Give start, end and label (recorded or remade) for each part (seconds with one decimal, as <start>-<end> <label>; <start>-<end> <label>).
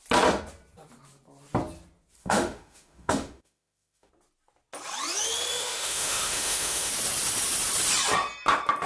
0.0-2.2 recorded; 2.2-4.1 remade; 4.1-5.5 recorded; 5.5-6.9 remade; 6.9-8.9 recorded